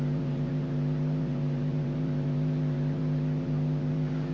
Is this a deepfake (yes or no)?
yes